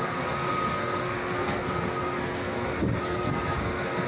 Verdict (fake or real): fake